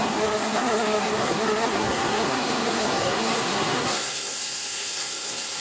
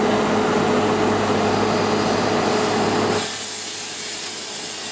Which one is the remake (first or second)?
first